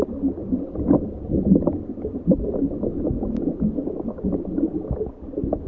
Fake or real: real